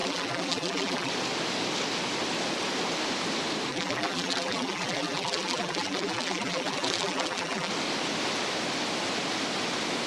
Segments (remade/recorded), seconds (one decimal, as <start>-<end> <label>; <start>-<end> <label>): 0.0-1.1 remade; 1.1-3.7 recorded; 3.7-7.7 remade; 7.7-10.1 recorded

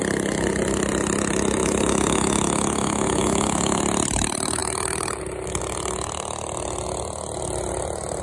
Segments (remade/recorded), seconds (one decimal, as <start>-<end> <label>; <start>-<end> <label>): 0.0-1.6 recorded; 1.6-3.8 remade; 3.8-8.2 recorded

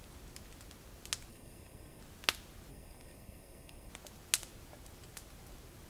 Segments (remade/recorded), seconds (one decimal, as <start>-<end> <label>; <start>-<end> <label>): 0.0-1.3 recorded; 1.3-2.0 remade; 2.0-2.7 recorded; 2.7-3.9 remade; 3.9-5.9 recorded

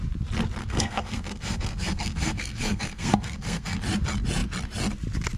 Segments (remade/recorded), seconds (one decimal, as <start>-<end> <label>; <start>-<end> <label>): 0.0-0.6 recorded; 0.6-3.8 remade; 3.8-5.4 recorded

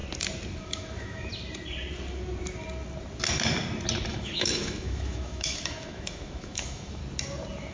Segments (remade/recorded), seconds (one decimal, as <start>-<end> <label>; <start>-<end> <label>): 0.0-0.6 recorded; 0.6-1.3 remade; 1.3-4.1 recorded; 4.1-7.0 remade; 7.0-7.7 recorded